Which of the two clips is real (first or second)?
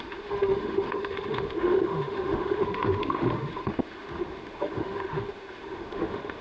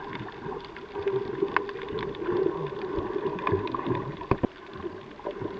second